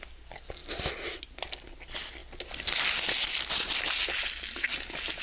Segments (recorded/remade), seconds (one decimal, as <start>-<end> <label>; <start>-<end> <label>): 0.0-5.2 recorded